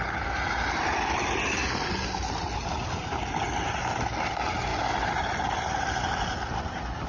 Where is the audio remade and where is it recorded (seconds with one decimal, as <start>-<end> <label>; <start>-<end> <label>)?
0.0-7.1 recorded

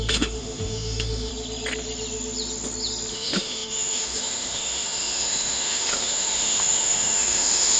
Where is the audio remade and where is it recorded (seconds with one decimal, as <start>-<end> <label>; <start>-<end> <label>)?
0.0-1.3 remade; 1.3-3.1 recorded; 3.1-7.8 remade

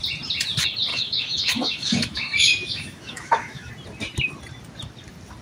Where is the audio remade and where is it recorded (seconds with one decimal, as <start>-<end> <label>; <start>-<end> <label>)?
0.0-0.9 recorded; 0.9-3.7 remade; 3.7-5.4 recorded

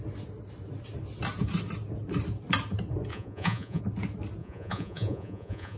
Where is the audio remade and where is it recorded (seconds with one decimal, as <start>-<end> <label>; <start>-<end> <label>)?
0.0-3.1 recorded; 3.1-3.8 remade; 3.8-4.4 recorded; 4.4-5.8 remade

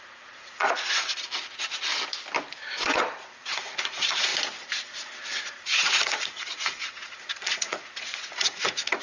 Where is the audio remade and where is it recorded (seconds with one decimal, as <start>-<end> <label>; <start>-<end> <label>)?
0.0-1.9 remade; 1.9-2.8 recorded; 2.8-4.3 remade; 4.3-5.4 recorded; 5.4-9.0 remade

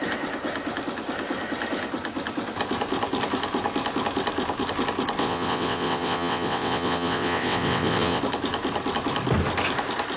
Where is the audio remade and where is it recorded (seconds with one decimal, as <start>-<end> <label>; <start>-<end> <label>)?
0.0-5.2 recorded; 5.2-8.2 remade; 8.2-10.2 recorded

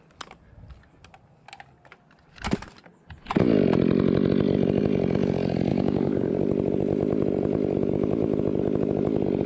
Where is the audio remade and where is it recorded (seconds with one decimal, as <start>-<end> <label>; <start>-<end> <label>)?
0.0-5.7 recorded; 5.7-6.3 remade; 6.3-9.5 recorded